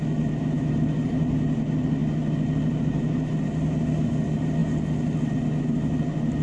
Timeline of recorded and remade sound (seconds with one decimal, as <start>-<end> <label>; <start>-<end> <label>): 0.0-6.4 recorded